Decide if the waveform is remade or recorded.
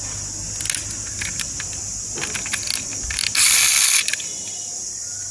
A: recorded